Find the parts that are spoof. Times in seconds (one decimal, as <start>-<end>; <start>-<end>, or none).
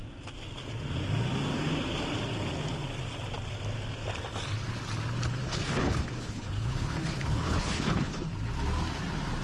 5.4-8.3